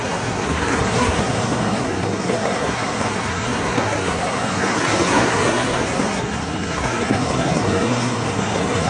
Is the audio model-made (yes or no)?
yes